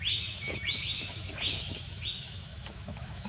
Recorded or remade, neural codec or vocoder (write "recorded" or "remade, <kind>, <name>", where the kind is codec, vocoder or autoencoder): remade, autoencoder, DAC-VAE